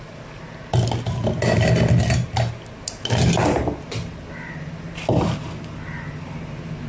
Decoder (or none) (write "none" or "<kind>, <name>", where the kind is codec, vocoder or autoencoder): none